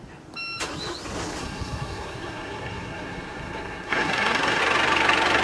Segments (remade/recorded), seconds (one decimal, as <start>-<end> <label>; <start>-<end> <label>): 0.0-1.4 recorded; 1.4-4.6 remade; 4.6-5.4 recorded